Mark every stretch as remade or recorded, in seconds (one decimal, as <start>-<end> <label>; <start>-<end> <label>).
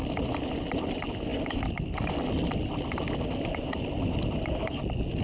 0.0-5.2 recorded